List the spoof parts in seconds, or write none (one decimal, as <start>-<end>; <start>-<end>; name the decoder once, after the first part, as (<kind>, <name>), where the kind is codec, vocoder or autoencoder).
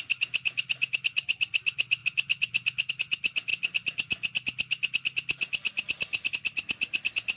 0.0-2.0 (vocoder, BigVGAN v2); 2.9-3.5; 6.3-7.4